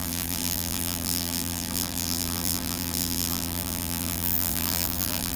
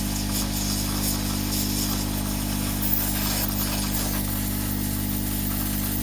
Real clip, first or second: second